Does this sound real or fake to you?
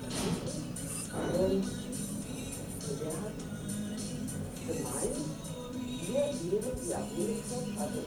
fake